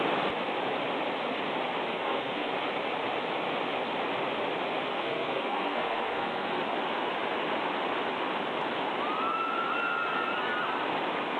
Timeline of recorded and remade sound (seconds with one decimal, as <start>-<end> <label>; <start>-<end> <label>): 0.0-1.9 recorded; 1.9-2.5 remade; 2.5-4.9 recorded; 4.9-6.6 remade; 6.6-11.4 recorded

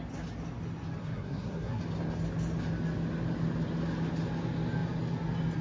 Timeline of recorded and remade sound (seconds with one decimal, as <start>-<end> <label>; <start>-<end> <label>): 0.0-1.0 recorded; 1.0-1.8 remade; 1.8-5.6 recorded

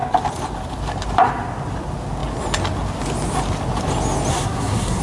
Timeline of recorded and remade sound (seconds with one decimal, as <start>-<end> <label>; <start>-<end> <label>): 0.0-4.3 recorded; 4.3-5.0 remade

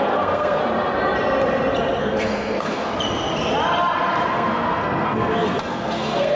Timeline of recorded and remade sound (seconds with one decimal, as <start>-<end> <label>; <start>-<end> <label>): 0.0-0.6 remade; 0.6-2.0 recorded; 2.0-2.9 remade; 2.9-4.3 recorded; 4.3-6.4 remade

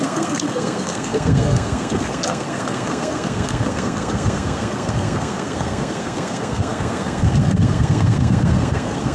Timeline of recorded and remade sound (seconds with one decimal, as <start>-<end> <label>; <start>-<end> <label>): 0.0-9.1 remade

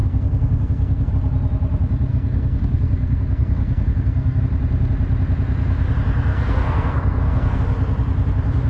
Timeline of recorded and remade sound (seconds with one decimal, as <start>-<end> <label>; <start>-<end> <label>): 0.0-1.1 remade; 1.1-2.1 recorded; 2.1-4.4 remade; 4.4-6.3 recorded; 6.3-7.6 remade; 7.6-8.7 recorded

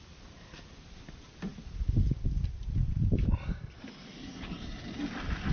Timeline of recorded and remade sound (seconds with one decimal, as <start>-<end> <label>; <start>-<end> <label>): 0.0-5.5 recorded